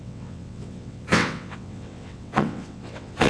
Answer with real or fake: fake